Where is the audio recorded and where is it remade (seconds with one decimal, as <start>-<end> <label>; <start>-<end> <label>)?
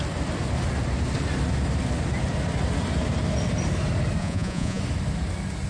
0.0-4.2 recorded; 4.2-4.8 remade; 4.8-5.7 recorded